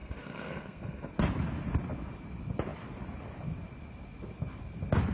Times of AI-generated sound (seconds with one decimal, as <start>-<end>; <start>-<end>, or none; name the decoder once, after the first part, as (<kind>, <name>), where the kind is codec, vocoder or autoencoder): 0.0-1.1 (codec, SNAC)